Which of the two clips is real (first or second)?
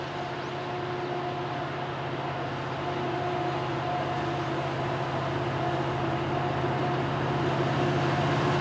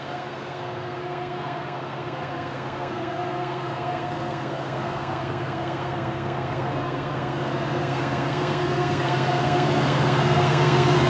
first